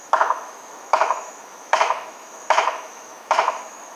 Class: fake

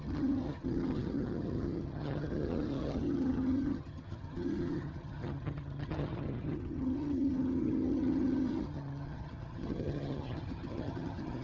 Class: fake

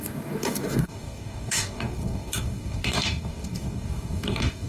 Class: fake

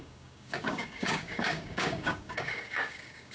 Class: fake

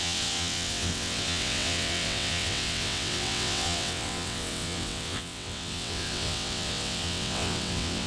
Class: fake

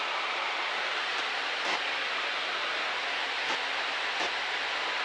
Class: real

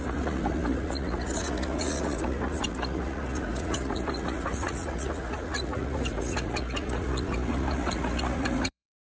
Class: fake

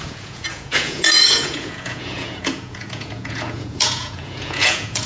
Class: fake